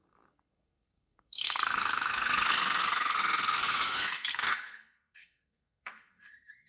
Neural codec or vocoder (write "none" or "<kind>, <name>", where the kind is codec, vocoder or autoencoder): codec, SNAC